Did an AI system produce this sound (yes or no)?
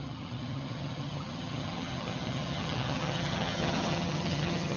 yes